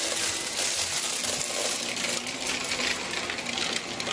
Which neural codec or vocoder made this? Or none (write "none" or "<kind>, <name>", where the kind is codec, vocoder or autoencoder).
none